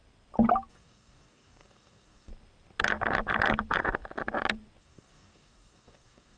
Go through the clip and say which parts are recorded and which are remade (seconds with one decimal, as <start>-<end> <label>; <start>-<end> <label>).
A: 0.0-0.7 recorded; 0.7-2.3 remade; 2.3-4.8 recorded; 4.8-6.4 remade